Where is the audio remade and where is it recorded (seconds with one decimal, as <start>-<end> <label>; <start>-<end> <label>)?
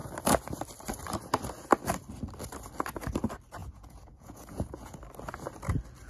0.0-3.6 recorded; 3.6-5.0 remade; 5.0-6.1 recorded